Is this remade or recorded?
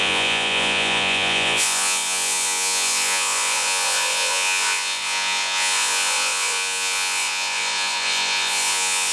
remade